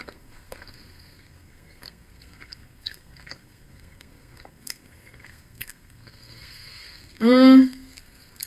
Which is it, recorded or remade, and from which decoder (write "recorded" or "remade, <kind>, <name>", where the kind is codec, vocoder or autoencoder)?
remade, codec, SNAC